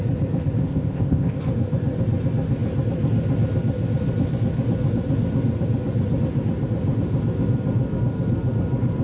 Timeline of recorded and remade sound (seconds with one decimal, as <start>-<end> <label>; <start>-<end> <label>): 0.0-0.6 recorded; 0.6-1.4 remade; 1.4-9.0 recorded